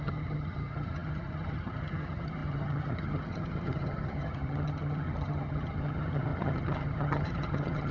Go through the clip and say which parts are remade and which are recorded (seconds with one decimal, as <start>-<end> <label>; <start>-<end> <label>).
0.0-7.9 remade